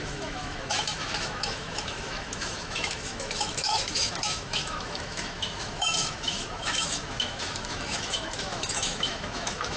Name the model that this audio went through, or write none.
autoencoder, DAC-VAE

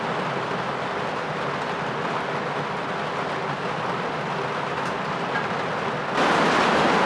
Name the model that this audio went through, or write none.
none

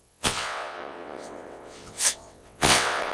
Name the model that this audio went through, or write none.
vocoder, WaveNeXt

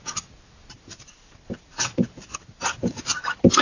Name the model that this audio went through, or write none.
none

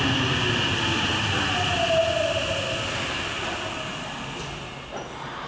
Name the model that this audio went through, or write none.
none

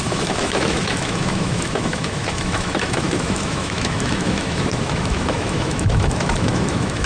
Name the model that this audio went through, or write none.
autoencoder, DAC-VAE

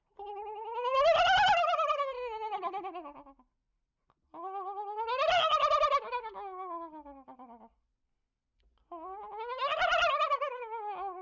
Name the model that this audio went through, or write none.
none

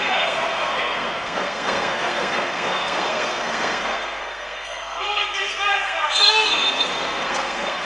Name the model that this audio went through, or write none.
codec, SNAC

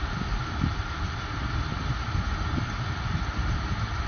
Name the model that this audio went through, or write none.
none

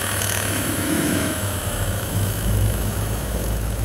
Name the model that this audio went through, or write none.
autoencoder, DAC-VAE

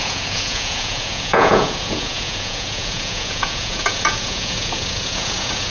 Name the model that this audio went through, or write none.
vocoder, Vocos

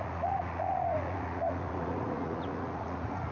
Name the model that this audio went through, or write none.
vocoder, Vocos